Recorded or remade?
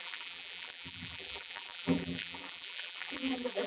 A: remade